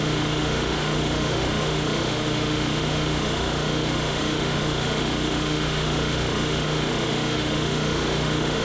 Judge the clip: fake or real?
fake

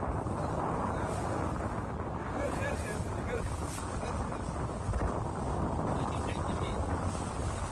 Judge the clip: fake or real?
real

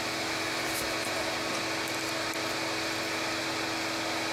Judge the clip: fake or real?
real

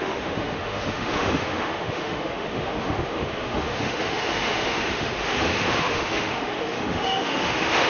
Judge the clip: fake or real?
fake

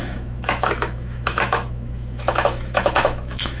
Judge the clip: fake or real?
fake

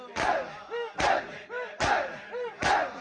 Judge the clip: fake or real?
real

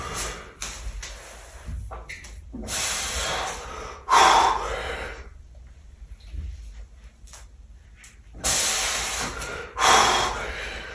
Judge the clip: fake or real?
real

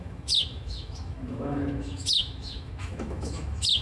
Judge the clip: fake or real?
fake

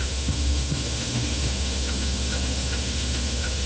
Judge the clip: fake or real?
fake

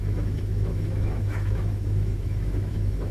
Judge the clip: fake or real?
fake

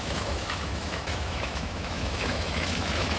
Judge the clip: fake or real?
fake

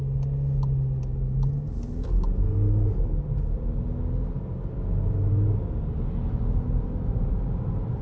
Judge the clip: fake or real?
real